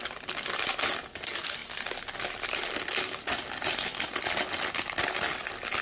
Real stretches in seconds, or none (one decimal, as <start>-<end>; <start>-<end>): 0.0-5.8